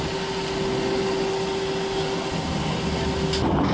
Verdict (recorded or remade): recorded